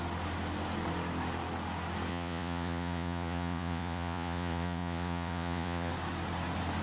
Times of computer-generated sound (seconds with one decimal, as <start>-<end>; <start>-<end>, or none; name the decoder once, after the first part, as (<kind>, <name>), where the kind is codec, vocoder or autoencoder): 2.1-5.9 (vocoder, Vocos)